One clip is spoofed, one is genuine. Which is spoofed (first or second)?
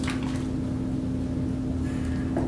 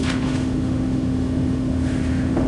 second